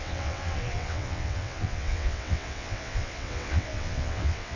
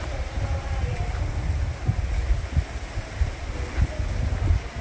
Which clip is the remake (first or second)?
first